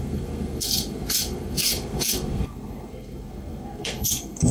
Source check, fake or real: fake